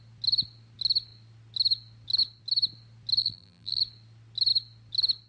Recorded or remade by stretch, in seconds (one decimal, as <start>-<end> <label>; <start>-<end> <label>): 0.0-3.2 recorded; 3.2-3.8 remade; 3.8-5.3 recorded